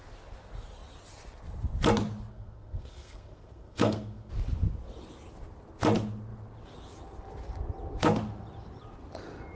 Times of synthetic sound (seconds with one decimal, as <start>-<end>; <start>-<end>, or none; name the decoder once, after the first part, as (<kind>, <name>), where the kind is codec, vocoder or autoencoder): 2.3-4.3 (codec, SNAC)